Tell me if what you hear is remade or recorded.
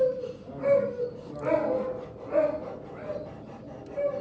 recorded